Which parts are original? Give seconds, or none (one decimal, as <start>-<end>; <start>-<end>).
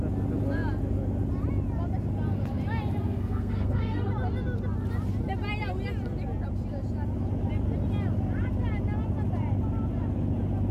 0.0-3.0; 4.1-10.7